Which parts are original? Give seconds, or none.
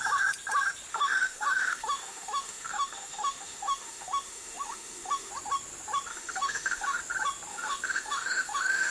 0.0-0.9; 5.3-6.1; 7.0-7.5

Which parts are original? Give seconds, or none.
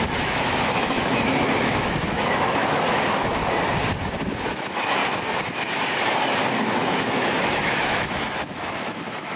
3.4-4.5; 5.0-6.8